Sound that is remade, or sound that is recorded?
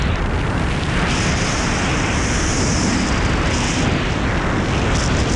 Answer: recorded